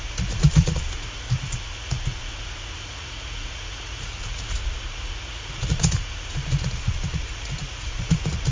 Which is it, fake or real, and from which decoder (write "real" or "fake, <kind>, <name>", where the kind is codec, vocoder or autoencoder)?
fake, vocoder, Vocos